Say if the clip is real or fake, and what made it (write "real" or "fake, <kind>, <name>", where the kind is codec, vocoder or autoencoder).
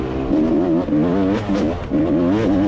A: real